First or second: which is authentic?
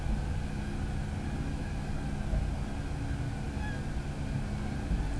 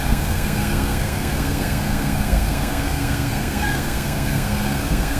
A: first